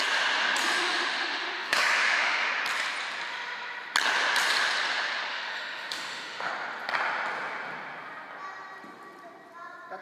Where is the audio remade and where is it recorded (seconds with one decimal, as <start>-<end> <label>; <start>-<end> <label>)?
0.0-0.6 recorded; 0.6-2.5 remade; 2.5-5.3 recorded; 5.3-6.5 remade; 6.5-10.0 recorded